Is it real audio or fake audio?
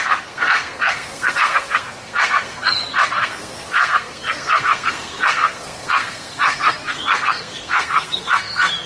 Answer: fake